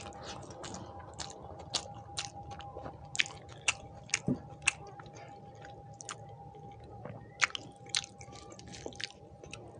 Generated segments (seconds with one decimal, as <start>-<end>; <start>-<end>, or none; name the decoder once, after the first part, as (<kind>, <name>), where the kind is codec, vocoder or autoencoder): none